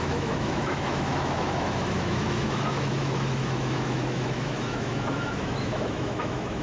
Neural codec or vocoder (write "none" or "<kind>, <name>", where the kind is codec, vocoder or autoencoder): autoencoder, DAC-VAE